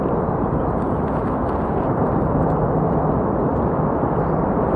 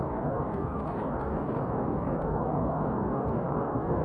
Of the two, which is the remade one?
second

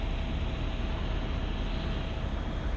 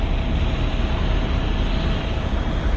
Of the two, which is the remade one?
second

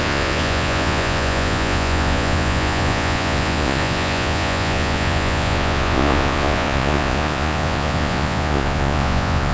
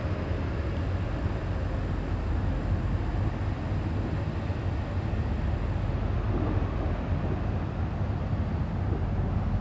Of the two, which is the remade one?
first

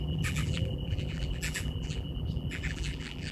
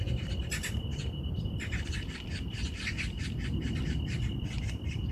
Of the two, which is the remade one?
first